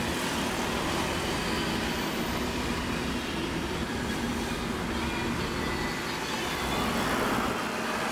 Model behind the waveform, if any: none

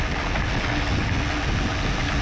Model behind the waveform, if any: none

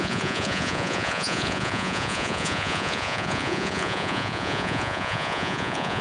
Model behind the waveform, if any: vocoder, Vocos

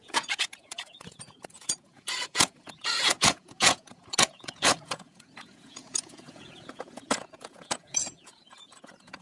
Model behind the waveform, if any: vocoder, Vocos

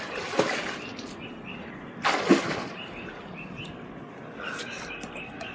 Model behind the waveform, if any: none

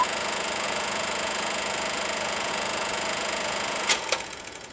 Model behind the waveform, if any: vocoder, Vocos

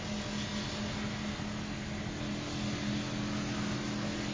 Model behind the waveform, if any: none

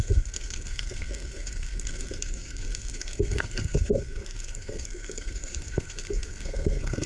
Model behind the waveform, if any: codec, SNAC